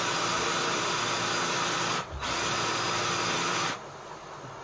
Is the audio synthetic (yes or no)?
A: no